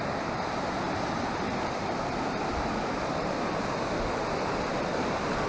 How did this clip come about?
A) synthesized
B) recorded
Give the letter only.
B